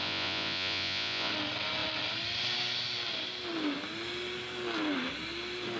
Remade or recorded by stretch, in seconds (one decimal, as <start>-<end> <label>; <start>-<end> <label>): 0.0-1.3 remade; 1.3-5.8 recorded